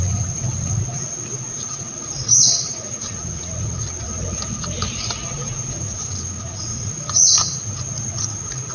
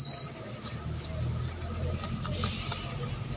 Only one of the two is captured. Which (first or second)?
second